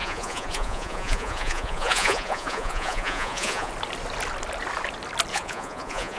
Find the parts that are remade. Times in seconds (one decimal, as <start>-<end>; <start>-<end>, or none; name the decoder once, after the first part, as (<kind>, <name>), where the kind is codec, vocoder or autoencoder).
0.0-3.7 (vocoder, Vocos); 5.3-6.2